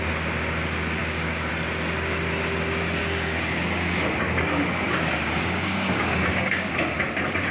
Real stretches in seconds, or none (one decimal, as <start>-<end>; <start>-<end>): 0.0-1.0; 1.5-3.0; 6.7-7.5

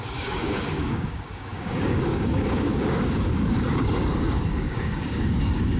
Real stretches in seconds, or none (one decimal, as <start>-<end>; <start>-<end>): none

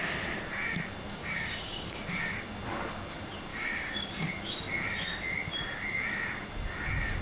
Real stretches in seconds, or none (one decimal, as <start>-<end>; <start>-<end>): 0.0-1.2; 2.0-3.5; 4.3-7.2

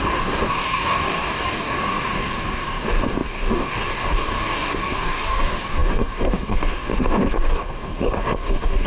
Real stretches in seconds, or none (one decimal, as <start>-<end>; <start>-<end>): none

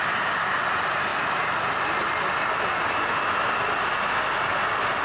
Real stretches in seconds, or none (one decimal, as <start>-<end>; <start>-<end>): 0.0-5.0

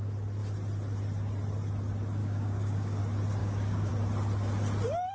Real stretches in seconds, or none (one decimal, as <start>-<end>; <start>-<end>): 0.0-2.2; 3.0-3.4; 3.9-5.1